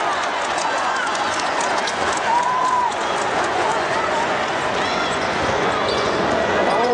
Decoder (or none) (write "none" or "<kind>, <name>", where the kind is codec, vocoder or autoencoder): vocoder, Vocos